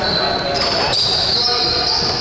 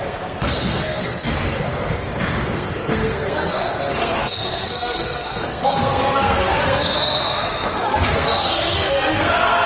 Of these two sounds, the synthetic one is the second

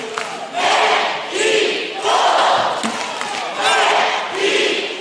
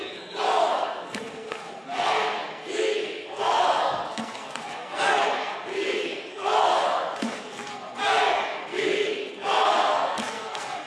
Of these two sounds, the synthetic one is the second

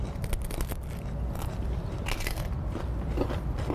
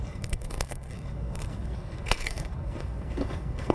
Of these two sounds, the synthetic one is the second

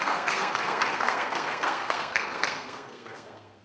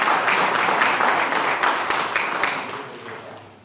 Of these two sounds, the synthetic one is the first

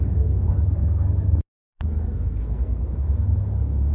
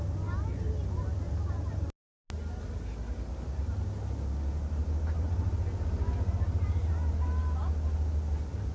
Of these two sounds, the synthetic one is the first